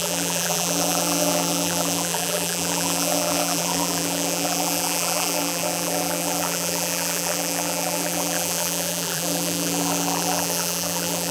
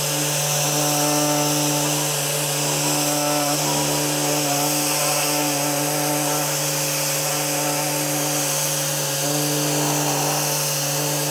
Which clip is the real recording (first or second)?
second